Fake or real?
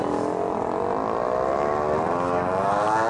real